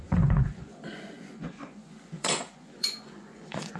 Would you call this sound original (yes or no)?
no